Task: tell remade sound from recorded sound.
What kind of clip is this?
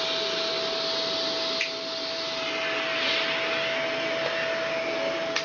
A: recorded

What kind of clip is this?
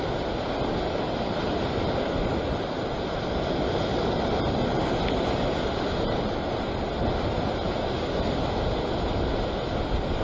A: recorded